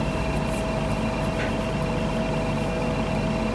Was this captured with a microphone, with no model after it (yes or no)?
yes